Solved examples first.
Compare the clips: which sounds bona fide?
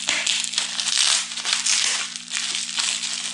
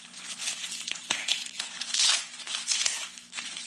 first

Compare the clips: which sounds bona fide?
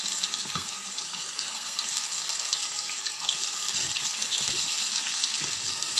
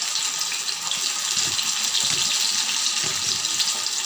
second